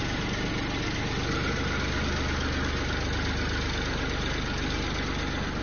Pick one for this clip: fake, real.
real